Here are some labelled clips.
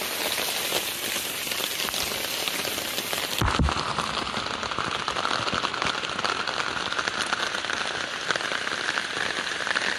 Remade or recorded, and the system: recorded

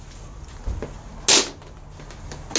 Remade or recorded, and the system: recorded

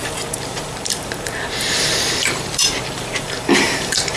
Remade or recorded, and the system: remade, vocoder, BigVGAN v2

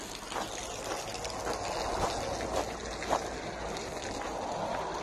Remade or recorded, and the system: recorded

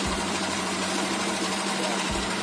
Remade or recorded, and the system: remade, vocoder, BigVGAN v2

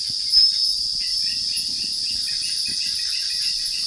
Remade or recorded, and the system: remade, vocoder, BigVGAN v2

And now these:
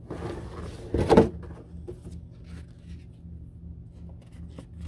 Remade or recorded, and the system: recorded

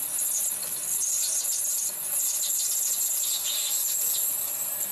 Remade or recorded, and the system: recorded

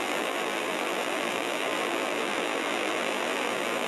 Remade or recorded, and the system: remade, vocoder, BigVGAN v2